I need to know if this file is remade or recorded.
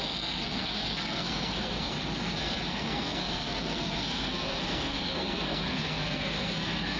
remade